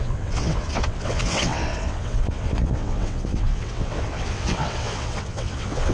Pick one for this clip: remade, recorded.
remade